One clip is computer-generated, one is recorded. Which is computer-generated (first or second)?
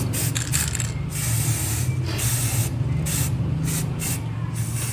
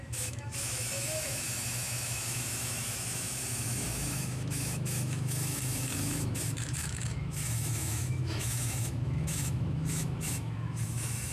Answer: second